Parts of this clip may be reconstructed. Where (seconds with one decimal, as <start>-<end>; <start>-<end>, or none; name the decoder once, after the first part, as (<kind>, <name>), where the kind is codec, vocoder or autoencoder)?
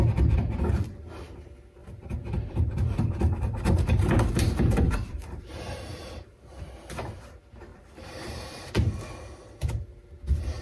1.8-6.7 (vocoder, BigVGAN v2); 7.7-8.7